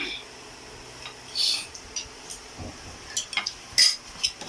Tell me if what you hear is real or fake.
real